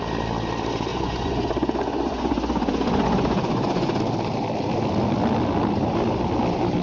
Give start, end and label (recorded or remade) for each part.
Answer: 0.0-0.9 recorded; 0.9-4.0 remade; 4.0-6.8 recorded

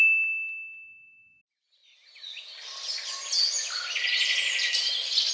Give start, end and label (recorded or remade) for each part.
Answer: 0.0-5.3 recorded

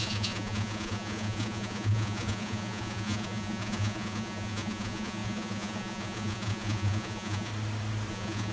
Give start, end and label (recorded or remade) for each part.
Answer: 0.0-7.5 remade; 7.5-8.1 recorded; 8.1-8.5 remade